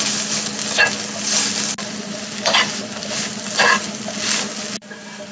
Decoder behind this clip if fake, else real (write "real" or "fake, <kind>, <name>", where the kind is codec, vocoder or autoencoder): real